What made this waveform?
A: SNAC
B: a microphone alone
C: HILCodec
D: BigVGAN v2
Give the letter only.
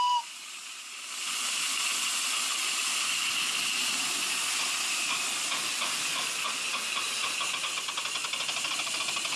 B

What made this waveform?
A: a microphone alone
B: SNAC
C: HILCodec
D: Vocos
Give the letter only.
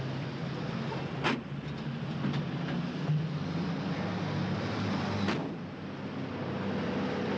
A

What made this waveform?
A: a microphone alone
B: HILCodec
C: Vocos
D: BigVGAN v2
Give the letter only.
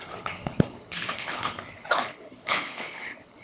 B